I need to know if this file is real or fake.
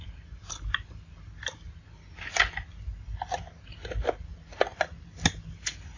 real